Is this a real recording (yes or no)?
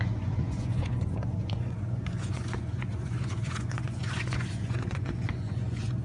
no